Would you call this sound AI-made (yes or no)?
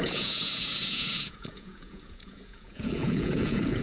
yes